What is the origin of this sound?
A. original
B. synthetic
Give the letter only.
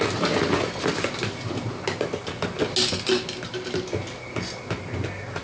A